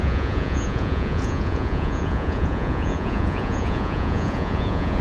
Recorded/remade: remade